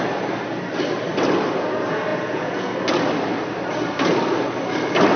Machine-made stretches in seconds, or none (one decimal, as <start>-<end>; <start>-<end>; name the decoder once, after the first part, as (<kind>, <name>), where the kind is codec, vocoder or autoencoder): 2.1-2.7 (vocoder, Vocos)

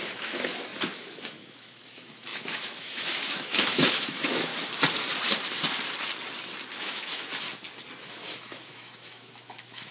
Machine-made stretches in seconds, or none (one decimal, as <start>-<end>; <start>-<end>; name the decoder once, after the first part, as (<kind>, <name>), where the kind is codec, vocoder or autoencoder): 0.0-4.5 (autoencoder, DAC-VAE); 6.8-7.3; 8.0-9.9

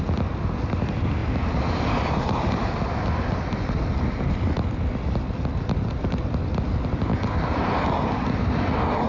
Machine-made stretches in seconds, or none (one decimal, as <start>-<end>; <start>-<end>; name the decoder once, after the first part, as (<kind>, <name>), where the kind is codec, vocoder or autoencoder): none

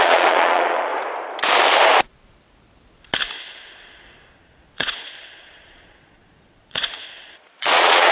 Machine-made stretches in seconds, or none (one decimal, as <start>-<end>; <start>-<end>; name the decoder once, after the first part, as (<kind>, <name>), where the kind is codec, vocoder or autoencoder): 0.0-0.9 (vocoder, Vocos); 4.3-8.1